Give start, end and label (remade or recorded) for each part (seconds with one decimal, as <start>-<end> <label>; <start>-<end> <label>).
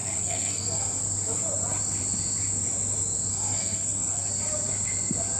0.0-1.0 remade; 1.0-3.3 recorded; 3.3-4.3 remade; 4.3-5.4 recorded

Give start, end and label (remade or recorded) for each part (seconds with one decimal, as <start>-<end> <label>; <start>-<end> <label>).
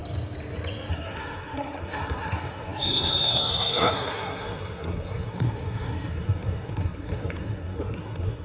0.0-0.9 recorded; 0.9-8.4 remade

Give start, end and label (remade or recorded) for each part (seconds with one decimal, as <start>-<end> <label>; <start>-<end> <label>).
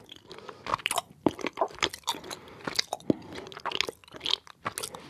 0.0-0.7 recorded; 0.7-1.9 remade; 1.9-5.1 recorded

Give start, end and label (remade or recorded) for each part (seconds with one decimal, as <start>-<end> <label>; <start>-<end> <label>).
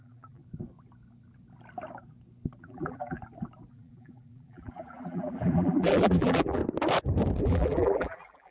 0.0-0.4 remade; 0.4-2.6 recorded; 2.6-3.2 remade; 3.2-3.7 recorded; 3.7-6.6 remade; 6.6-7.4 recorded; 7.4-8.5 remade